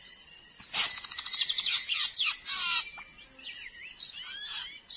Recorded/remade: recorded